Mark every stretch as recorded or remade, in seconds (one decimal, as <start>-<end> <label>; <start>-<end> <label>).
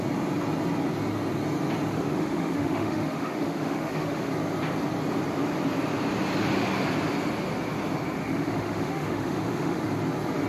0.0-1.9 recorded; 1.9-4.3 remade; 4.3-8.2 recorded; 8.2-9.8 remade; 9.8-10.5 recorded